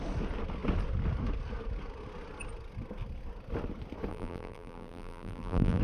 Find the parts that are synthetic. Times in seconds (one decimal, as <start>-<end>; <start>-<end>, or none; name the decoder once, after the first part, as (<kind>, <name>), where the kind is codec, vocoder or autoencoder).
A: 4.1-5.8 (vocoder, BigVGAN v2)